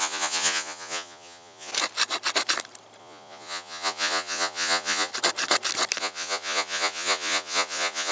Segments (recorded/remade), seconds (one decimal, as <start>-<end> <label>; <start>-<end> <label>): 0.0-1.7 remade; 1.7-3.0 recorded; 3.0-5.1 remade; 5.1-6.0 recorded; 6.0-8.1 remade

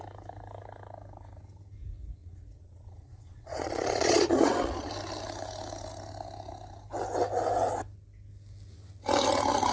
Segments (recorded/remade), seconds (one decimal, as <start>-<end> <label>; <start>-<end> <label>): 0.0-2.2 recorded; 2.2-4.9 remade; 4.9-9.7 recorded